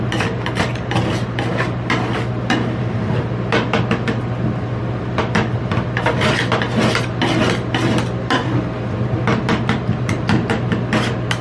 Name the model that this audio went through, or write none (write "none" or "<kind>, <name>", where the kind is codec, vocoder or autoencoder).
none